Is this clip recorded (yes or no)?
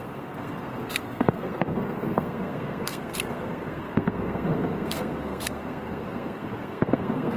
no